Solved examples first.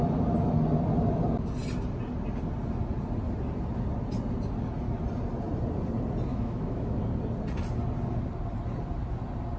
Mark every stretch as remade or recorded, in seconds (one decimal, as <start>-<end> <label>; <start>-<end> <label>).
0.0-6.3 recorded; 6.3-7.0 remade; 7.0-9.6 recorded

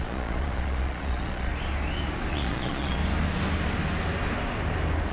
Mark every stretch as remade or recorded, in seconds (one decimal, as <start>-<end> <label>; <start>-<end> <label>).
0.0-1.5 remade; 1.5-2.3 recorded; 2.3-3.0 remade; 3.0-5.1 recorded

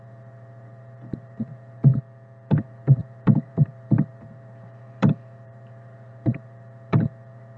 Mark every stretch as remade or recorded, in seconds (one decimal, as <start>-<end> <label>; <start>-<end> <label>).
0.0-1.9 remade; 1.9-2.6 recorded; 2.6-7.6 remade

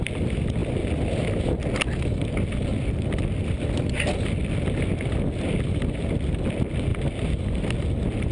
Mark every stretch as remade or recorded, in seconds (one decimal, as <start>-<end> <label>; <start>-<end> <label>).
0.0-8.3 recorded

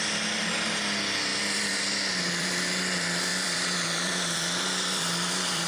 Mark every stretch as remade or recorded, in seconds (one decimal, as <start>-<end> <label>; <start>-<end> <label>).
0.0-1.3 recorded; 1.3-2.7 remade; 2.7-3.3 recorded; 3.3-5.7 remade

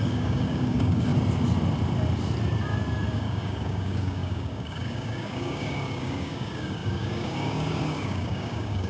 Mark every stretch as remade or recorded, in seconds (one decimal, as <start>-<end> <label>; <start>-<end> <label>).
0.0-1.1 remade; 1.1-3.1 recorded; 3.1-8.9 remade